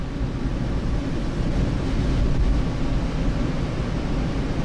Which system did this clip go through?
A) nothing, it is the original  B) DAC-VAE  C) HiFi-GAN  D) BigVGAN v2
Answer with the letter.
A